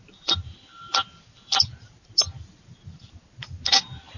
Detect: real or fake real